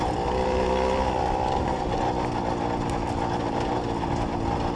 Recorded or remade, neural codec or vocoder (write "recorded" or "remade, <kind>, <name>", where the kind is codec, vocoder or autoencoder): recorded